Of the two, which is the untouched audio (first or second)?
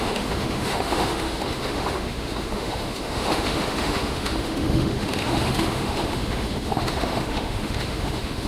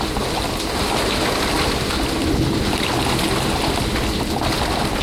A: second